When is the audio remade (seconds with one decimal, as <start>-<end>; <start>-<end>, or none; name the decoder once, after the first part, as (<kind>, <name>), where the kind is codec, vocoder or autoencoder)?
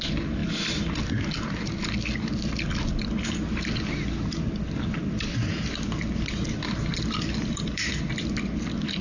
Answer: 6.9-8.1 (vocoder, BigVGAN v2)